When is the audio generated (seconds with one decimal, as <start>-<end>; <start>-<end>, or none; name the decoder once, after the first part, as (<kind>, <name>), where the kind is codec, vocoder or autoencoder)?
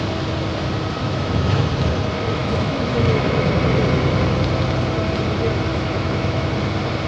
1.0-1.7 (autoencoder, DAC-VAE); 2.4-3.5; 5.7-6.5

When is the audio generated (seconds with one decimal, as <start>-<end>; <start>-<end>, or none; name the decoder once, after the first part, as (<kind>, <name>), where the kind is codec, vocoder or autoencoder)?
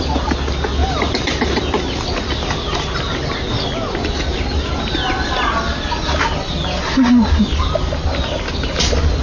0.8-1.5 (vocoder, BigVGAN v2)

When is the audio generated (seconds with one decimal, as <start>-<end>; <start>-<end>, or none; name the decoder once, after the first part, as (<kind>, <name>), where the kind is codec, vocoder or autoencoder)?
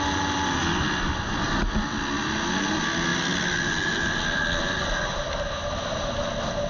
none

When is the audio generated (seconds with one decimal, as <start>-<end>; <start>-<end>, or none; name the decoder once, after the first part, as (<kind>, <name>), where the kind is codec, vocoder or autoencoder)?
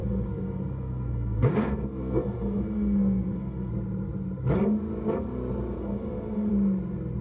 0.0-3.7 (codec, SNAC); 5.8-6.5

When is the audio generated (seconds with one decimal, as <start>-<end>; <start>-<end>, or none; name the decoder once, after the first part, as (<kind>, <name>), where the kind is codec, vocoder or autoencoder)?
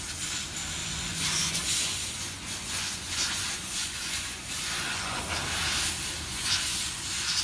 0.8-5.2 (vocoder, Vocos); 6.3-7.4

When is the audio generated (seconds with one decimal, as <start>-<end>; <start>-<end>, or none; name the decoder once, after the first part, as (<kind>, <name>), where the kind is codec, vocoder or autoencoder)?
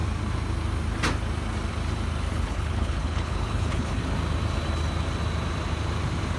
2.3-4.0 (codec, HILCodec)